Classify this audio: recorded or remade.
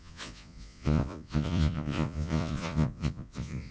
remade